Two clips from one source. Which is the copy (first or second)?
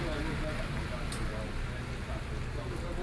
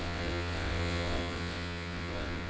second